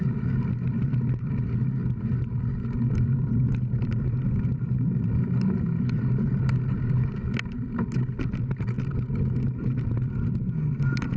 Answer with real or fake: real